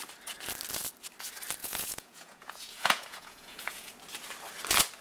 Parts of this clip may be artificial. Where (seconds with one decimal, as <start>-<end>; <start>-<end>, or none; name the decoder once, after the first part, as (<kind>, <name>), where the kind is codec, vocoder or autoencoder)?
1.6-3.9 (vocoder, Vocos)